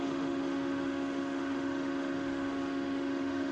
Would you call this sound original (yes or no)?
no